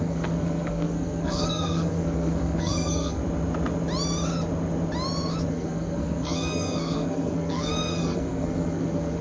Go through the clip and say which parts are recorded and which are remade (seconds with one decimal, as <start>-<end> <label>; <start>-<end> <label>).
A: 0.0-3.2 remade; 3.2-5.5 recorded; 5.5-9.2 remade